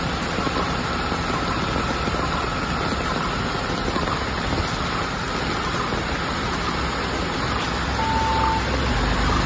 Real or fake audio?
real